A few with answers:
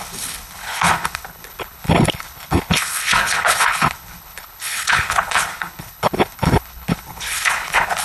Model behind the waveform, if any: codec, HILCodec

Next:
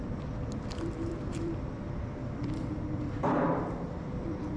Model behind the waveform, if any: vocoder, BigVGAN v2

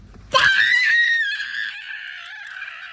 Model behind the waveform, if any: vocoder, BigVGAN v2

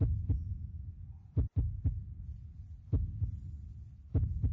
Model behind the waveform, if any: none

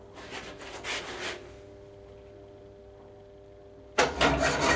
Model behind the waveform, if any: none